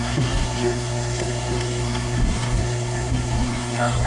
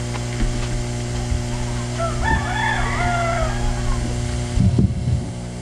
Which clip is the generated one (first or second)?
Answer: first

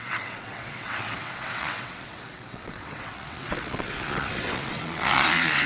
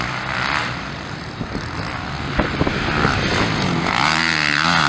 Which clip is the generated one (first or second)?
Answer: first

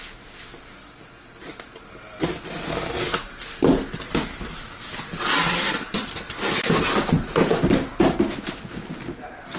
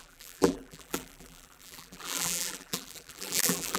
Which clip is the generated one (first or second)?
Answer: second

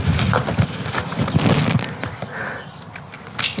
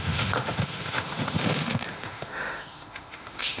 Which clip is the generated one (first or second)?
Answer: second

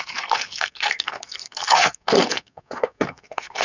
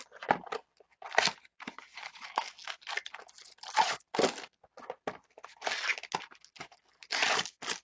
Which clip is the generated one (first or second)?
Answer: first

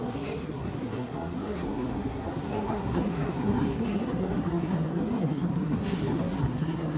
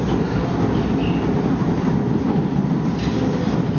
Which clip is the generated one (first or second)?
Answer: first